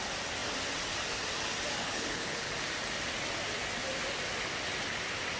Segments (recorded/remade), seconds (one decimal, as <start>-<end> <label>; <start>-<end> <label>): 0.0-1.8 recorded; 1.8-2.5 remade; 2.5-5.4 recorded